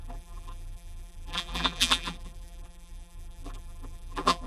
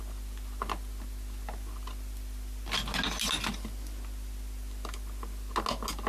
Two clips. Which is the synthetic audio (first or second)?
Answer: first